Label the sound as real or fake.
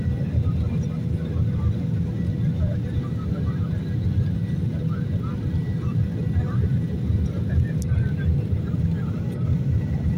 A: real